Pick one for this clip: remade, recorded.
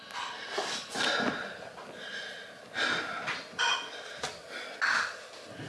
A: recorded